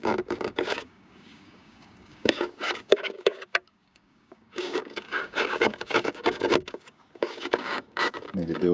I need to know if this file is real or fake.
fake